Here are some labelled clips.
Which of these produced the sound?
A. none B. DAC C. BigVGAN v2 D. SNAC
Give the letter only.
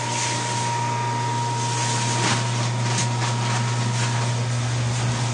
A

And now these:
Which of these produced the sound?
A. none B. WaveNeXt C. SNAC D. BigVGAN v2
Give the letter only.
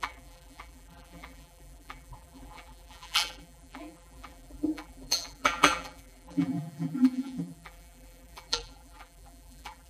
D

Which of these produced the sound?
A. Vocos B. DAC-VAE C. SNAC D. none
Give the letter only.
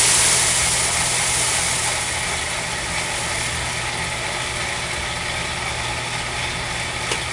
D